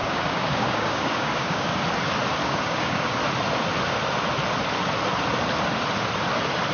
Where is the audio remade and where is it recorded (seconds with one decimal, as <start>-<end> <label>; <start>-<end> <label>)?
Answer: 0.0-1.8 remade; 1.8-2.4 recorded; 2.4-3.2 remade; 3.2-6.7 recorded

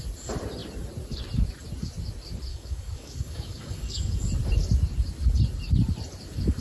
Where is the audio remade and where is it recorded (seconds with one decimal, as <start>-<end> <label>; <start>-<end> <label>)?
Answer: 0.0-2.5 recorded; 2.5-4.2 remade; 4.2-6.6 recorded